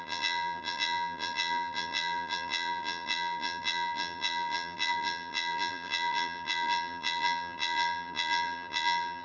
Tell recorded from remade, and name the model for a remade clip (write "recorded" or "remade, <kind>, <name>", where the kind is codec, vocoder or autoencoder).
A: remade, vocoder, BigVGAN v2